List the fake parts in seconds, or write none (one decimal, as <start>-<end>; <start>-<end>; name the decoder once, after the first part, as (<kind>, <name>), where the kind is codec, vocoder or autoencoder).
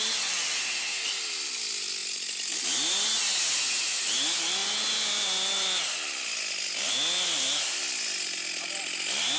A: none